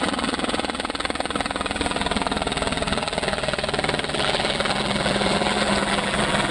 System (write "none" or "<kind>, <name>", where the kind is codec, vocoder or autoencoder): vocoder, BigVGAN v2